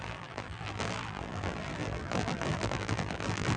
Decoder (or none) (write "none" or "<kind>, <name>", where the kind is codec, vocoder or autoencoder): vocoder, BigVGAN v2